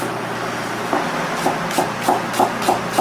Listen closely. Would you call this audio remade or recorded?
recorded